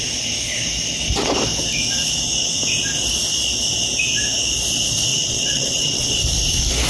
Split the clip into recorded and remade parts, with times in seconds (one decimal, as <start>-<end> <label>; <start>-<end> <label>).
0.0-5.1 recorded; 5.1-6.2 remade; 6.2-6.9 recorded